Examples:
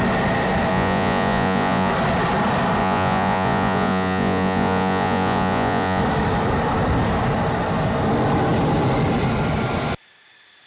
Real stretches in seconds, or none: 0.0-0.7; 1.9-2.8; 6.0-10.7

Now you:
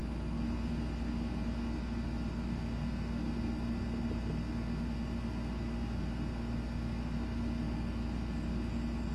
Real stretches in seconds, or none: 0.0-9.1

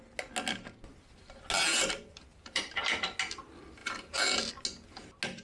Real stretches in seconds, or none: 0.0-1.7; 3.0-3.8; 4.5-5.4

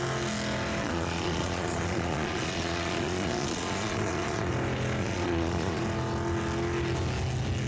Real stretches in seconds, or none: 0.0-0.8; 4.5-5.0; 5.8-7.7